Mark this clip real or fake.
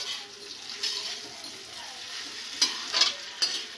real